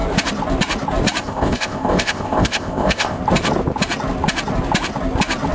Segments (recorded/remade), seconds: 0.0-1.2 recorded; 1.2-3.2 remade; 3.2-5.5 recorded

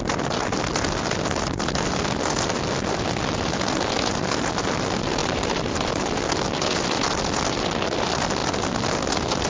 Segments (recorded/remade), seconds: 0.0-5.2 recorded; 5.2-6.0 remade; 6.0-9.5 recorded

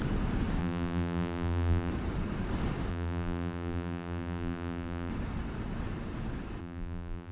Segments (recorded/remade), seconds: 0.0-0.6 recorded; 0.6-1.9 remade; 1.9-2.9 recorded; 2.9-5.1 remade; 5.1-6.6 recorded; 6.6-7.3 remade

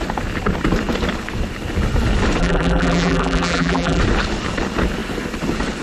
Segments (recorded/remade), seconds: 0.0-2.4 recorded; 2.4-4.0 remade; 4.0-5.8 recorded

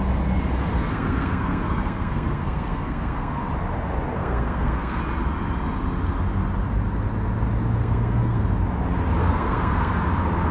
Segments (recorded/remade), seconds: 0.0-0.7 recorded; 0.7-3.5 remade; 3.5-4.2 recorded; 4.2-5.0 remade; 5.0-7.8 recorded; 7.8-8.4 remade; 8.4-9.2 recorded; 9.2-9.9 remade; 9.9-10.5 recorded

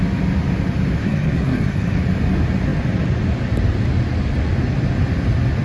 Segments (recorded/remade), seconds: 0.0-1.0 recorded; 1.0-2.0 remade; 2.0-5.6 recorded

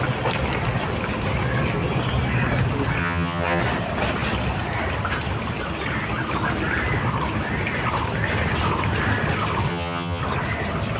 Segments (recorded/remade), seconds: 0.0-3.0 recorded; 3.0-3.6 remade; 3.6-9.7 recorded; 9.7-10.2 remade; 10.2-11.0 recorded